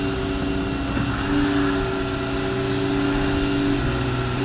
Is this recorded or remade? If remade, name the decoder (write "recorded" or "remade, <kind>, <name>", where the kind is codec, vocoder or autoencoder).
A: recorded